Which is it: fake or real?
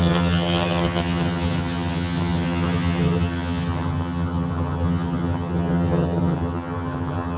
fake